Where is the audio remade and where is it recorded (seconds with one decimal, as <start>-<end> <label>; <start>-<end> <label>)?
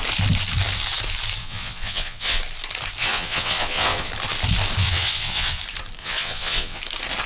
0.0-1.4 recorded; 1.4-2.4 remade; 2.4-3.0 recorded; 3.0-4.1 remade; 4.1-4.8 recorded; 4.8-5.6 remade; 5.6-6.0 recorded; 6.0-6.8 remade; 6.8-7.3 recorded